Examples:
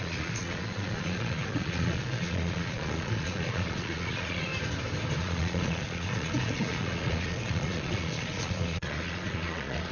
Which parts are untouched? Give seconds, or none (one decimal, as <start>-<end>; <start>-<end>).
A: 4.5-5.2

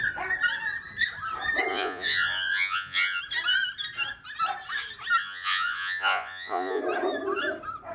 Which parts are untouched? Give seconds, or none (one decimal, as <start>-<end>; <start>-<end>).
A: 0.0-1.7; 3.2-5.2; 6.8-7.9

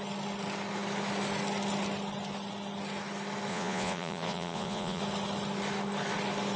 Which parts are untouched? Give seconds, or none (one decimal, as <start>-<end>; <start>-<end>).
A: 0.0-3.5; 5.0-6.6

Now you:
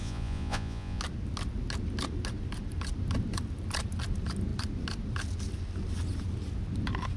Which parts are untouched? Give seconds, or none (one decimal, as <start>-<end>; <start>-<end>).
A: 1.0-7.2

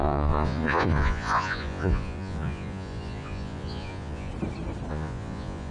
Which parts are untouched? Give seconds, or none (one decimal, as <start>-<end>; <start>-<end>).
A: 4.3-4.9

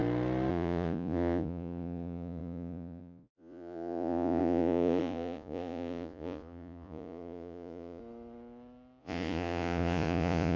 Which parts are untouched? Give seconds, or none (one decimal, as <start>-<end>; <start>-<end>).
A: 0.0-0.5; 8.0-9.0

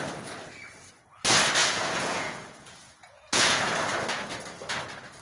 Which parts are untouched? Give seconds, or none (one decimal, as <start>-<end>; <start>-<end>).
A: 0.0-1.6; 3.7-5.2